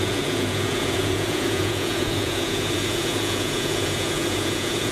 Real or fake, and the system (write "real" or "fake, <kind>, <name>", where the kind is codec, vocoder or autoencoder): fake, vocoder, Vocos